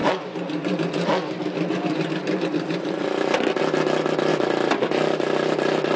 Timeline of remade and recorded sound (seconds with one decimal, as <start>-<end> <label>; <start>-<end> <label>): 0.0-3.6 remade; 3.6-4.3 recorded; 4.3-6.0 remade